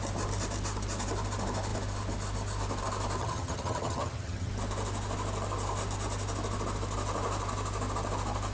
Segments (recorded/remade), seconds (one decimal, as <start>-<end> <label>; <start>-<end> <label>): 0.0-3.2 recorded; 3.2-4.5 remade; 4.5-8.5 recorded